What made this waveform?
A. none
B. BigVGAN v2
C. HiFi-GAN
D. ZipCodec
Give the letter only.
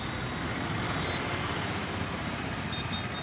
A